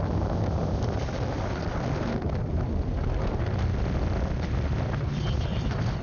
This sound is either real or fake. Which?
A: real